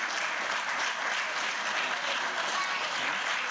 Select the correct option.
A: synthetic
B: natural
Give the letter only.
B